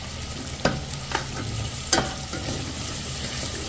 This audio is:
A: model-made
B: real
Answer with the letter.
B